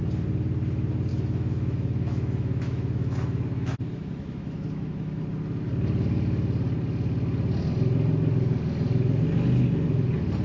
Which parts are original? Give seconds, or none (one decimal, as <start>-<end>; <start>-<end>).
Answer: 0.0-1.1; 5.2-10.4